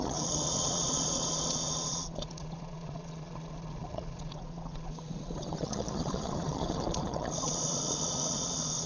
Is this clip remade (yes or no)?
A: yes